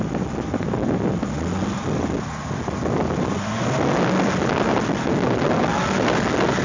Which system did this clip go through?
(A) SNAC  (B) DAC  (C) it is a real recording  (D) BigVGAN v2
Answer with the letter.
C